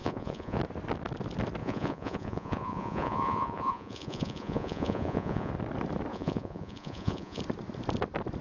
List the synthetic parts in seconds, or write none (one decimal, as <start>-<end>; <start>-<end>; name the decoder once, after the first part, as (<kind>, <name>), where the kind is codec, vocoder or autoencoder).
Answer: 0.0-0.6 (vocoder, Vocos); 1.6-5.5; 6.1-7.4